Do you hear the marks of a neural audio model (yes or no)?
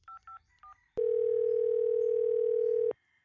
no